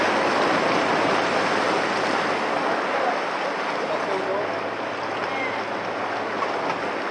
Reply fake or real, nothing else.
real